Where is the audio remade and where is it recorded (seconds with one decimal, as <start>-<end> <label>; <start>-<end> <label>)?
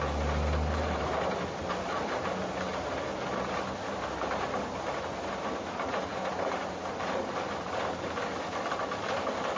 0.0-9.6 recorded